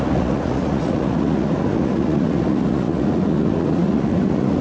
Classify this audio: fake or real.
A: fake